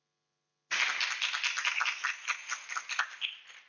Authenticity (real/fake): real